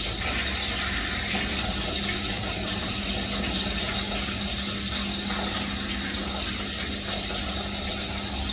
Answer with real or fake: real